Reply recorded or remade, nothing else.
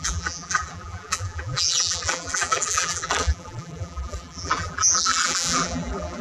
remade